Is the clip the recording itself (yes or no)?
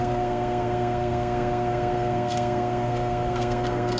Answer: no